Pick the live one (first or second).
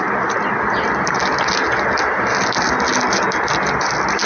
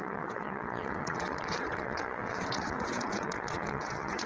first